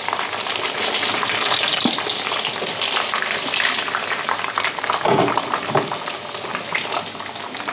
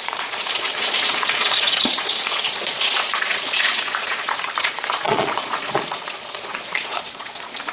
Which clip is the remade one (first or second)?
second